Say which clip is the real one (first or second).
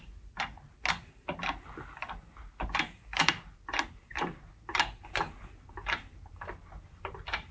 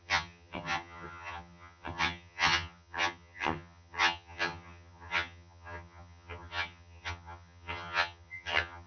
first